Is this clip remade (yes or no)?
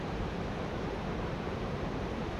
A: yes